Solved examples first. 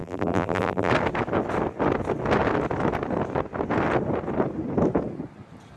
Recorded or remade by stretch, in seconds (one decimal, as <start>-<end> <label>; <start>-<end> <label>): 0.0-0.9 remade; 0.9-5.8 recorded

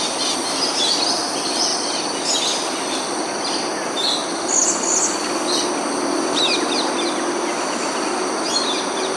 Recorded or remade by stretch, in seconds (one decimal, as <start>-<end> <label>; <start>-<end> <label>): 0.0-9.2 recorded

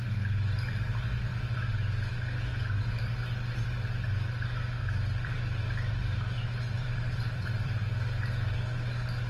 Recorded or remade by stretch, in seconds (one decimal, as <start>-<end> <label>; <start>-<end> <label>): 0.0-4.8 recorded; 4.8-7.8 remade; 7.8-9.3 recorded

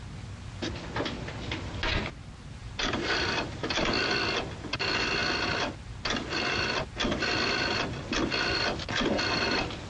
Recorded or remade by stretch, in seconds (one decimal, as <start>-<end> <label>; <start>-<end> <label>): 0.0-2.6 recorded; 2.6-3.7 remade; 3.7-9.9 recorded

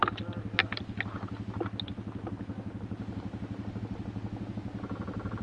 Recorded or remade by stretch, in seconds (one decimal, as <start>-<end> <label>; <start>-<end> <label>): 0.0-4.7 recorded; 4.7-5.4 remade

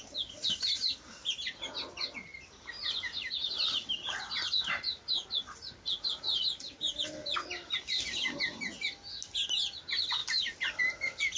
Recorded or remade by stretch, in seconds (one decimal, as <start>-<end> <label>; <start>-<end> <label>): 0.0-11.4 recorded